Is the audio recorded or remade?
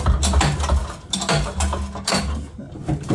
recorded